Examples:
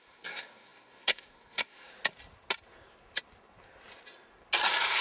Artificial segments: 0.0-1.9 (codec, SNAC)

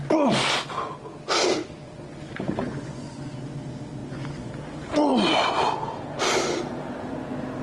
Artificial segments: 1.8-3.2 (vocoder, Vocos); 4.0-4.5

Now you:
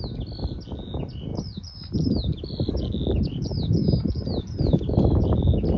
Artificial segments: none